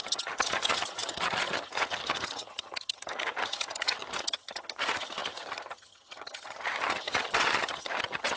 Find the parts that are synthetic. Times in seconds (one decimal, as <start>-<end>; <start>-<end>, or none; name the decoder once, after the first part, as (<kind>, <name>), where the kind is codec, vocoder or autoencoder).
0.0-8.4 (vocoder, HiFi-GAN)